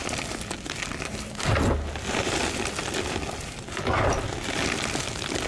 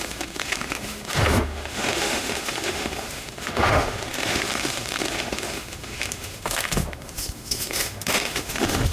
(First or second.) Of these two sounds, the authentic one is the first